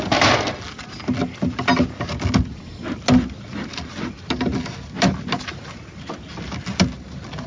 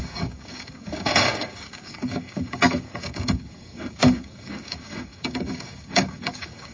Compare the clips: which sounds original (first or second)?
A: first